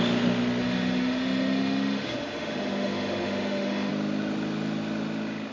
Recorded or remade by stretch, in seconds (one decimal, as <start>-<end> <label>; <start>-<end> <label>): 0.0-0.6 recorded; 0.6-3.9 remade; 3.9-5.5 recorded